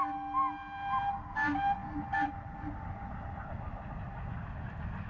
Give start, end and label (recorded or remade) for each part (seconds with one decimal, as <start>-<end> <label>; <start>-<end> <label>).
0.0-5.1 recorded